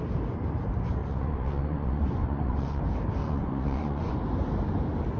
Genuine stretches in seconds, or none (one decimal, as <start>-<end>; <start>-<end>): 0.0-1.0; 2.8-3.2; 4.1-5.2